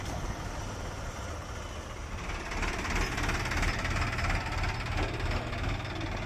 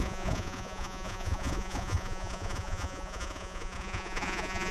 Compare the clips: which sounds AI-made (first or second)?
second